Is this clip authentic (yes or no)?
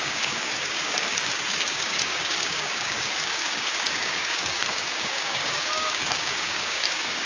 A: no